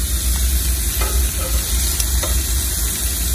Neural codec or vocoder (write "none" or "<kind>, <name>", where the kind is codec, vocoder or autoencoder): none